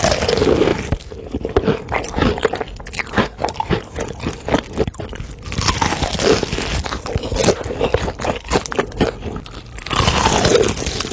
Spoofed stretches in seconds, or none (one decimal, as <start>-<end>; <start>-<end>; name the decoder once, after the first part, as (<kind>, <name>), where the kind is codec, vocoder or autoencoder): none